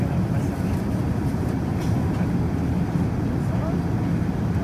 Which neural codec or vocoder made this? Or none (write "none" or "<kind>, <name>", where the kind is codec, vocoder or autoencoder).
none